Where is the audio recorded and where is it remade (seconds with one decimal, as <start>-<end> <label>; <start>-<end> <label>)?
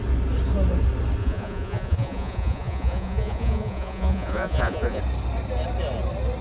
0.0-1.2 recorded; 1.2-5.0 remade; 5.0-6.4 recorded